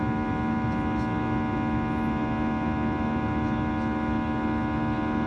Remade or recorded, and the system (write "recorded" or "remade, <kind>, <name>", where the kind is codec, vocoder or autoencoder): recorded